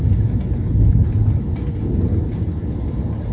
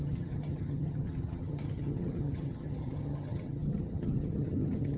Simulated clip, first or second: second